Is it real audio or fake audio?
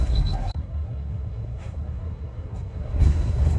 fake